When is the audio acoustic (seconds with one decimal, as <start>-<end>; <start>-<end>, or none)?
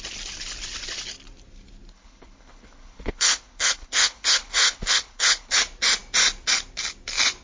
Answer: 0.0-1.9; 5.6-7.4